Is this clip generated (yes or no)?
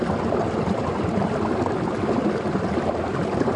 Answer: no